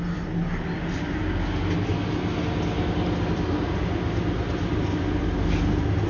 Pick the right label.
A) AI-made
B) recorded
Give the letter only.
B